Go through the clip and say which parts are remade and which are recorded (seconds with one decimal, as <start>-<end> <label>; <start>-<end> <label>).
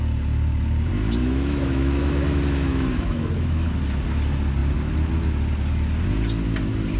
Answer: 0.0-1.2 recorded; 1.2-3.8 remade; 3.8-7.0 recorded